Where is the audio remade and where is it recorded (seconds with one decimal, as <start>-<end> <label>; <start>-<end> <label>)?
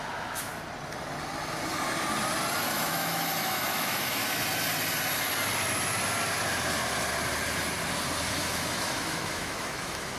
0.0-0.5 remade; 0.5-2.7 recorded; 2.7-4.2 remade; 4.2-8.3 recorded; 8.3-10.2 remade